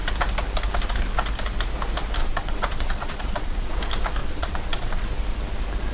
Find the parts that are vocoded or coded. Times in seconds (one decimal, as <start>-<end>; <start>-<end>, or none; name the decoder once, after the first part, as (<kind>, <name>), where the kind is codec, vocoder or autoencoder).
2.2-3.8 (vocoder, Vocos); 4.2-5.0